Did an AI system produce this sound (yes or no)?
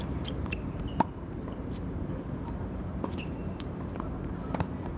yes